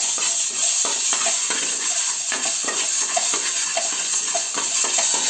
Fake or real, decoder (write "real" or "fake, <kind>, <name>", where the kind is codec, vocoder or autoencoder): fake, vocoder, Vocos